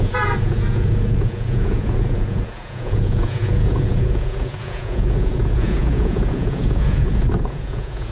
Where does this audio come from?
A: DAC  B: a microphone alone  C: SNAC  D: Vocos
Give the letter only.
D